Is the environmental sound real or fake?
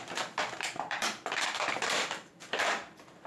fake